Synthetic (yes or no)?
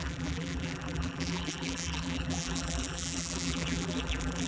yes